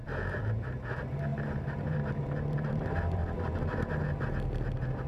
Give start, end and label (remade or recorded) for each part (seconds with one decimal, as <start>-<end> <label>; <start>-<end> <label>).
0.0-3.2 remade; 3.2-5.1 recorded